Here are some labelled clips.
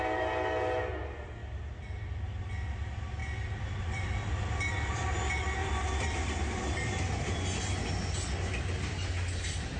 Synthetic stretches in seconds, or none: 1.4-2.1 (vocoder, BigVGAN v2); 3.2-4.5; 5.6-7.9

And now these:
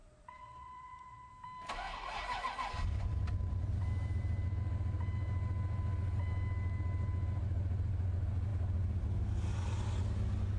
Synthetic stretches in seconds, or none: 0.0-1.3 (vocoder, Vocos)

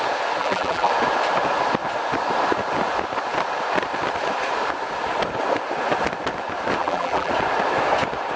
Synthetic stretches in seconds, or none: 0.4-0.9 (vocoder, BigVGAN v2); 6.8-7.3